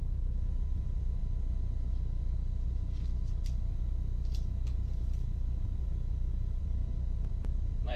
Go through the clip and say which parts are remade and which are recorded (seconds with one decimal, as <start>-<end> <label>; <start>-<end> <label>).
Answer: 0.0-1.2 remade; 1.2-5.8 recorded; 5.8-6.8 remade; 6.8-7.5 recorded; 7.5-8.0 remade